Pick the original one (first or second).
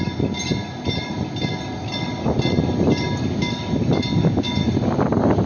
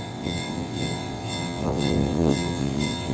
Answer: first